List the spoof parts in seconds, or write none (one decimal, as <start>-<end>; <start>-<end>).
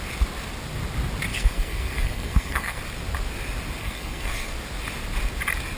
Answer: 1.3-2.8; 3.8-4.5